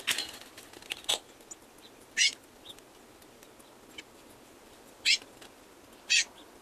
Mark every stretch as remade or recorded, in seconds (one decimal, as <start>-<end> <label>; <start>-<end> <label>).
0.0-6.6 recorded